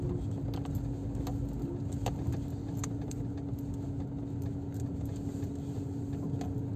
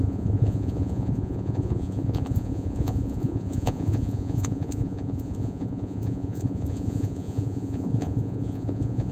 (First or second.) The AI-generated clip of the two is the second